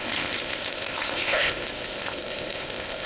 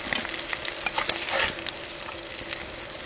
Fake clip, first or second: first